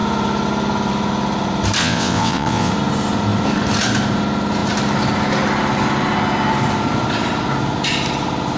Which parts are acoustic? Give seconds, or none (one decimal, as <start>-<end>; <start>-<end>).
0.0-1.8; 2.7-8.6

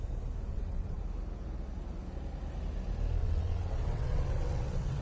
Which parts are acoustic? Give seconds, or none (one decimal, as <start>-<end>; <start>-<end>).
0.0-0.5; 1.0-3.2